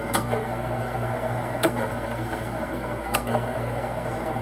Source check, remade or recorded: remade